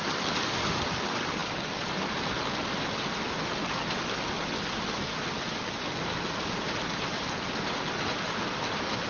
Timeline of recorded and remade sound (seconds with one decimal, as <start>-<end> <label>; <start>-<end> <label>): 0.0-9.1 recorded